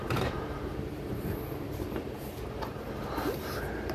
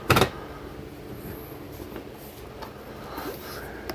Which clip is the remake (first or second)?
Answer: first